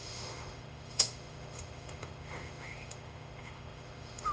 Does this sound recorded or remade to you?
remade